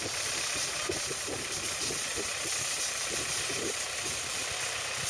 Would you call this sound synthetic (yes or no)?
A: no